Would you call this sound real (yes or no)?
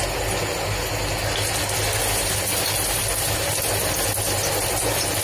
yes